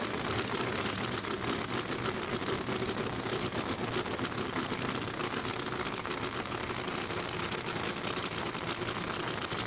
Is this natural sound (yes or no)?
yes